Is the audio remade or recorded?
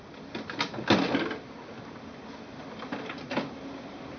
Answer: recorded